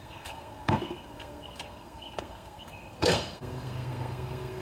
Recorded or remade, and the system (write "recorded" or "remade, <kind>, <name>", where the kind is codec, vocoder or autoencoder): remade, codec, SNAC